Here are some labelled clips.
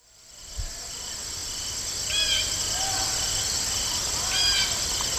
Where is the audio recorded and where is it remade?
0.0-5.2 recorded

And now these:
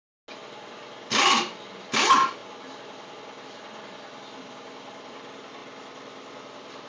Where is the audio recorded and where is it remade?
0.0-6.9 recorded